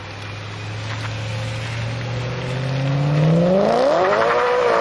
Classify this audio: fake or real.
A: real